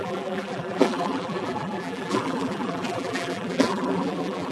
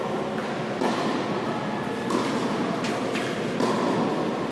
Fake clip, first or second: first